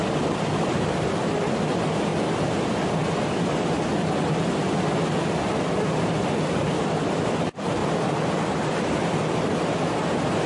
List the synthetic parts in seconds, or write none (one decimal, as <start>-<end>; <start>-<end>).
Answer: 0.0-1.2; 7.8-9.9